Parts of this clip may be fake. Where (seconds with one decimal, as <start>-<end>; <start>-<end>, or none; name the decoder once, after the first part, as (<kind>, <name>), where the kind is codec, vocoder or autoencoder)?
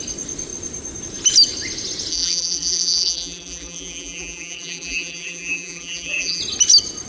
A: 2.1-6.4 (vocoder, BigVGAN v2)